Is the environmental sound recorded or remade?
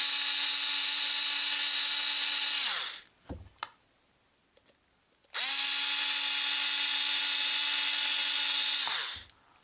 recorded